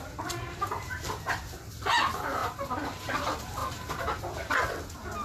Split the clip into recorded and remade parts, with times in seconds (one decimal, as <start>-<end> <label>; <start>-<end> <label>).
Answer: 0.0-5.2 recorded